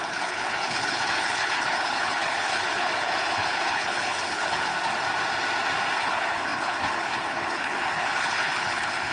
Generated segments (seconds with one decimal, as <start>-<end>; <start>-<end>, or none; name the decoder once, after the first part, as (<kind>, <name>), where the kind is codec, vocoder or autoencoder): 0.0-4.7 (codec, HILCodec); 6.0-9.1